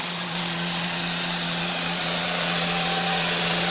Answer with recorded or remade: remade